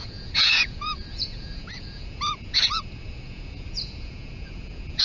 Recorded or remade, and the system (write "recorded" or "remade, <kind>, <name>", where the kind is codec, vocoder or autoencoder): remade, vocoder, Vocos